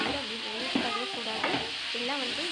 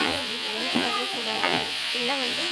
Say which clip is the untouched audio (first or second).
first